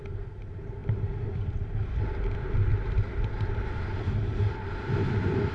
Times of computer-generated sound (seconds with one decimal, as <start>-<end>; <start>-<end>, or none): none